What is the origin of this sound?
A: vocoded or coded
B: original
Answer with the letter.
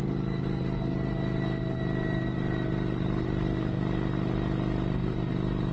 B